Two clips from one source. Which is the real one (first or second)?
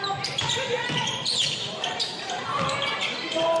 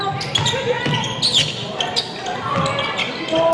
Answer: second